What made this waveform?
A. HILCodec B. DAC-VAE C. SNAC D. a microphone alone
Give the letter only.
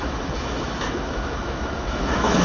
B